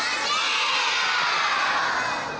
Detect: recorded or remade recorded